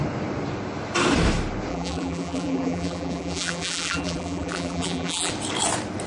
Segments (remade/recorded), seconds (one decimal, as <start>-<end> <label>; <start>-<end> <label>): 0.0-1.7 recorded; 1.7-5.3 remade; 5.3-6.1 recorded